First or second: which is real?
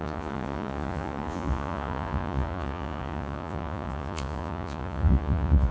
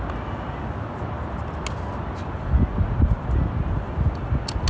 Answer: second